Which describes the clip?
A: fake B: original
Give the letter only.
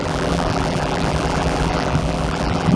A